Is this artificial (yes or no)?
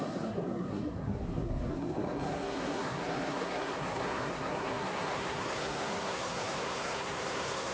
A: yes